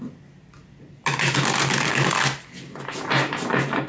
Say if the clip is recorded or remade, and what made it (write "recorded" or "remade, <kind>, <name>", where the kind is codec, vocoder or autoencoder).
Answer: recorded